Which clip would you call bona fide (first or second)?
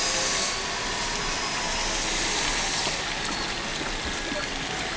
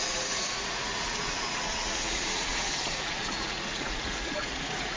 first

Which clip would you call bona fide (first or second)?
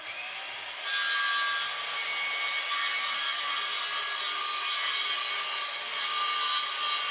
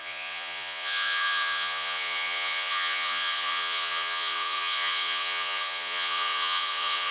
first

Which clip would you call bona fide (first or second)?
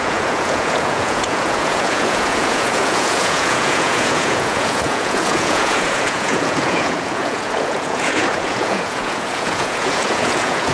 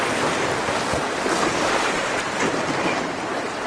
second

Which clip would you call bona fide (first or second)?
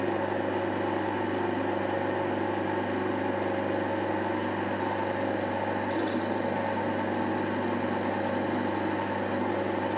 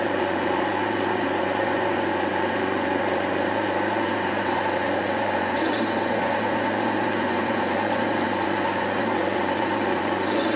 first